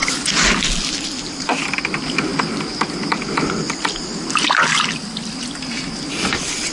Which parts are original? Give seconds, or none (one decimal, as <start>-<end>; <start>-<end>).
0.0-6.7